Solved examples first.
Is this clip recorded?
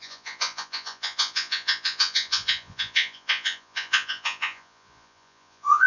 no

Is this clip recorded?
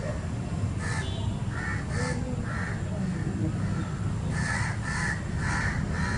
yes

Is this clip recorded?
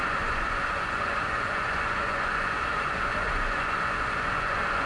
no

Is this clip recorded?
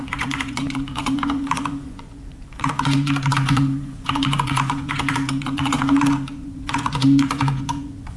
no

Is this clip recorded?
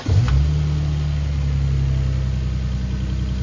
yes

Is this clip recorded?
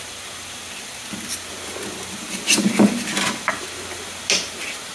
yes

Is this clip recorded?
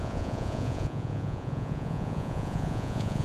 no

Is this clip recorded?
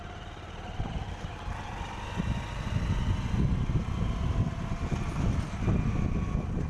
yes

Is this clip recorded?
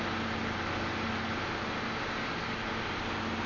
yes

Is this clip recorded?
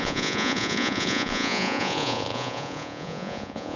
no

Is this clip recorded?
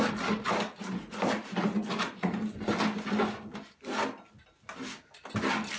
yes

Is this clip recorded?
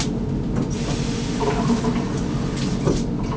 yes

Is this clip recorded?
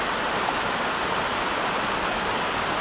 yes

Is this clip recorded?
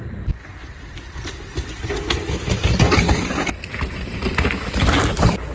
yes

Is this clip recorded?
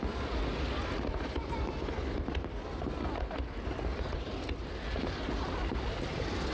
yes